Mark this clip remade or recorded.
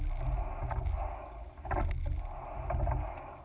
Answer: recorded